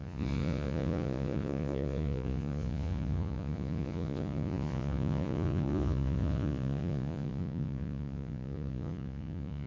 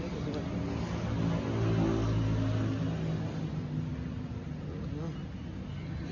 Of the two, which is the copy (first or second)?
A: first